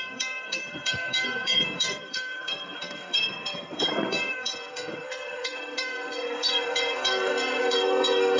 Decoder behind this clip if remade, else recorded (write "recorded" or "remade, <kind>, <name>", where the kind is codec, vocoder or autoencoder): remade, codec, SNAC